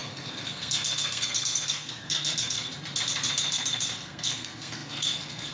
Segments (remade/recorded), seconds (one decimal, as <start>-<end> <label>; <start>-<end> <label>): 0.0-2.7 remade; 2.7-3.3 recorded; 3.3-5.5 remade